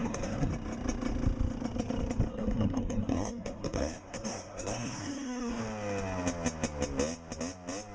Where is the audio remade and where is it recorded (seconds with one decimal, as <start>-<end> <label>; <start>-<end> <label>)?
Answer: 0.0-0.5 remade; 0.5-2.3 recorded; 2.3-5.6 remade; 5.6-7.9 recorded